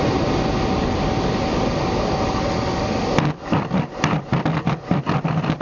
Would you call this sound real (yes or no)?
yes